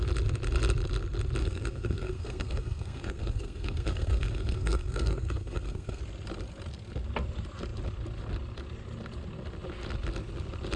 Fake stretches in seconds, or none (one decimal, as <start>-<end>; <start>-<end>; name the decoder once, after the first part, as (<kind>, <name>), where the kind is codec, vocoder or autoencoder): 1.4-6.0 (codec, SNAC)